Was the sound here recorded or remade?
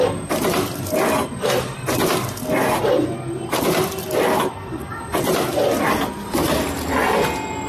recorded